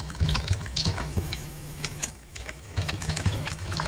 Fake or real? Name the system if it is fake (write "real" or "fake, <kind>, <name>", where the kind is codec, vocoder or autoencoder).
fake, autoencoder, DAC-VAE